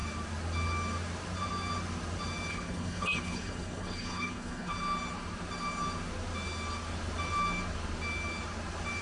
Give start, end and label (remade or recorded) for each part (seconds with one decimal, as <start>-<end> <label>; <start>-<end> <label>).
0.0-2.5 recorded; 2.5-4.7 remade; 4.7-9.0 recorded